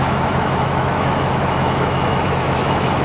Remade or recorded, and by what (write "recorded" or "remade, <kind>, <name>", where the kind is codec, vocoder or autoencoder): remade, autoencoder, DAC-VAE